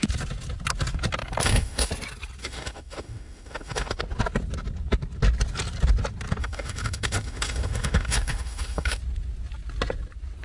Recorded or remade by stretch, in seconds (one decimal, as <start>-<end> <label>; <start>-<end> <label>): 0.0-1.4 recorded; 1.4-1.9 remade; 1.9-2.4 recorded; 2.4-4.0 remade; 4.0-6.4 recorded; 6.4-9.0 remade; 9.0-10.4 recorded